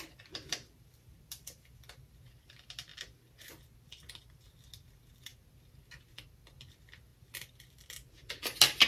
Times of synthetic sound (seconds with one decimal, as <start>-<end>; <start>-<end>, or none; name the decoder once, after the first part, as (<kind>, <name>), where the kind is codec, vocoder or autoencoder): none